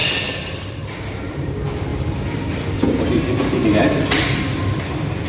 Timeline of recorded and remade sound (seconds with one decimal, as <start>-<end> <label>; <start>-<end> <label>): 0.0-1.2 remade; 1.2-1.9 recorded; 1.9-3.8 remade; 3.8-4.5 recorded; 4.5-5.3 remade

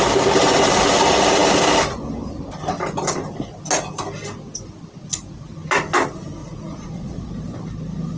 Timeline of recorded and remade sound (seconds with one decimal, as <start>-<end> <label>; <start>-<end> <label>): 0.0-6.4 recorded; 6.4-7.3 remade; 7.3-8.2 recorded